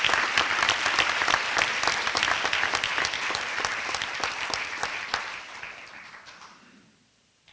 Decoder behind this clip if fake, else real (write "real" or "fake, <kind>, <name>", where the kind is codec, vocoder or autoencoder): fake, vocoder, BigVGAN v2